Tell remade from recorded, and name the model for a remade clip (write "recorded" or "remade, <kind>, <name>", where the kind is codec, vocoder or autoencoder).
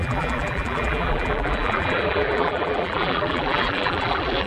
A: remade, vocoder, BigVGAN v2